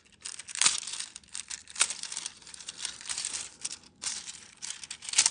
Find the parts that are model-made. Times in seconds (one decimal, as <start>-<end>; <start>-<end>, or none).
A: 1.6-4.8